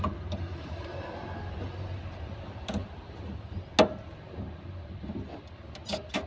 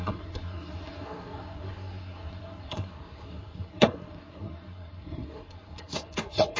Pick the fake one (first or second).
second